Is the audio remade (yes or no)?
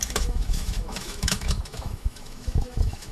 yes